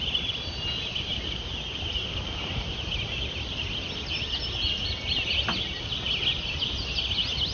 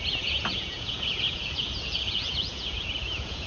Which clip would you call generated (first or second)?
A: second